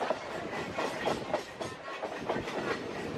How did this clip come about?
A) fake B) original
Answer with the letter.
B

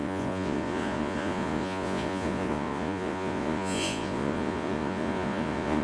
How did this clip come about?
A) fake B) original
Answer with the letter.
A